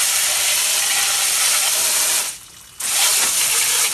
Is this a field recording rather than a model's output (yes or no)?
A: yes